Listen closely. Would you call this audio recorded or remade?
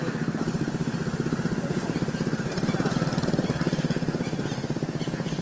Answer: recorded